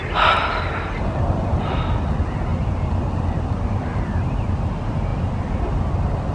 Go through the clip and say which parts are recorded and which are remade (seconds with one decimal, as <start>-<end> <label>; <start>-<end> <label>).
0.0-5.1 recorded; 5.1-5.8 remade; 5.8-6.3 recorded